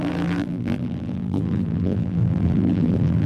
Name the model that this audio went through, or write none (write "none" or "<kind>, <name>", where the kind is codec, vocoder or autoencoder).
vocoder, BigVGAN v2